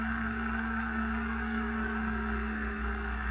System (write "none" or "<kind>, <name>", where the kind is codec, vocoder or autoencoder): codec, SNAC